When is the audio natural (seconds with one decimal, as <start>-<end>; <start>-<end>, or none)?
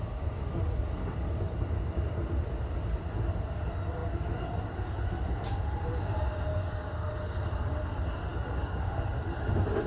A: 0.0-6.5; 7.1-8.3; 8.9-9.9